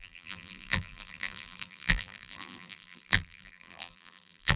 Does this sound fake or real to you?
fake